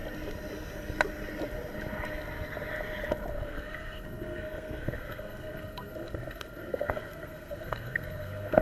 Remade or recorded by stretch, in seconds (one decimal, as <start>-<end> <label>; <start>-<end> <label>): 0.0-3.3 recorded; 3.3-8.6 remade